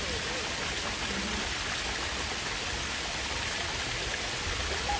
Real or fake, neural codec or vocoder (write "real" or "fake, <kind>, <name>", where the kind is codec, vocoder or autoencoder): real